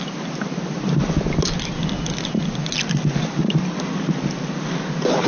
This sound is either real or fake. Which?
real